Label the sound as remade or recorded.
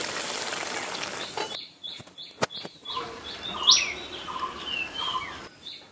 recorded